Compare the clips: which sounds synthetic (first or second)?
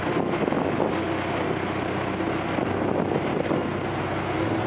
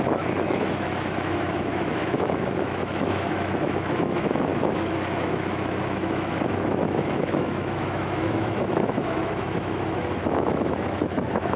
second